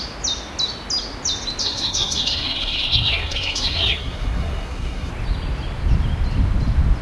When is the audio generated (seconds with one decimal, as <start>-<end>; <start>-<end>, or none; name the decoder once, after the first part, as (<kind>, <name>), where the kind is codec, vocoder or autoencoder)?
1.6-5.1 (codec, SNAC)